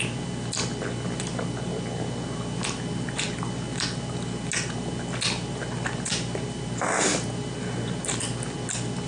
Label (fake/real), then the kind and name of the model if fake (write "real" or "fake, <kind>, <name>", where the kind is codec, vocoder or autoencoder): real